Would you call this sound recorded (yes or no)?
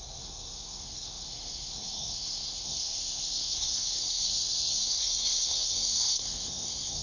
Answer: no